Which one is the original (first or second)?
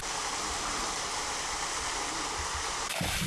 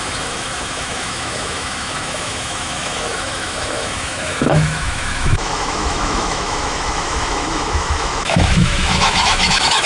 first